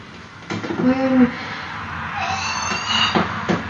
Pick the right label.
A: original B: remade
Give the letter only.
A